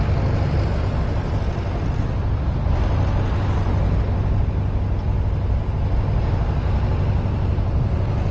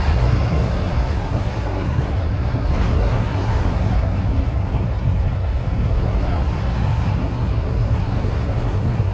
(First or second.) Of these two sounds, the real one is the first